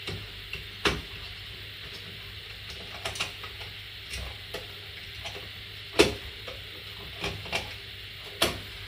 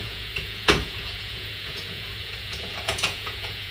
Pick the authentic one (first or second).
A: first